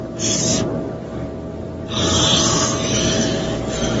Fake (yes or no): no